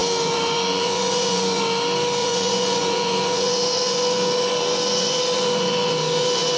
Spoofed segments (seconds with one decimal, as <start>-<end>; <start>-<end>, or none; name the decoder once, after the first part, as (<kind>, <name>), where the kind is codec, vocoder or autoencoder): 0.0-1.6 (vocoder, Vocos); 2.2-6.6